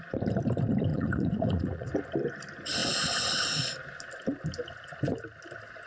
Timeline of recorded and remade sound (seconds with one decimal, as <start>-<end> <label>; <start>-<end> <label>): 0.0-0.9 recorded; 0.9-1.9 remade; 1.9-5.9 recorded